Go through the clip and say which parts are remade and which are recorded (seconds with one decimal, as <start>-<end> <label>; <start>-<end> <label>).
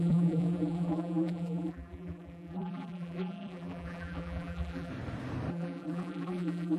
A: 0.0-4.9 remade; 4.9-5.5 recorded; 5.5-6.8 remade